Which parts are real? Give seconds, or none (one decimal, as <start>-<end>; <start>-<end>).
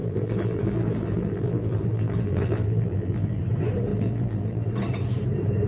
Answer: 3.4-3.9; 4.7-5.7